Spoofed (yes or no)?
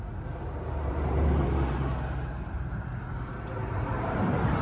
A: yes